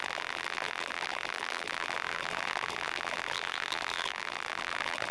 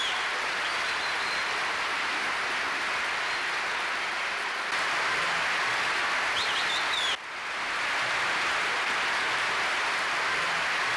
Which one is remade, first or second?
first